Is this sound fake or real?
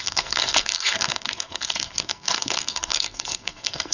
fake